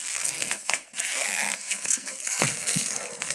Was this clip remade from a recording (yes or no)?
yes